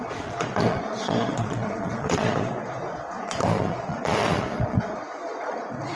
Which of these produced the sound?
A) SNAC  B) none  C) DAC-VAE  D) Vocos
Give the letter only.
D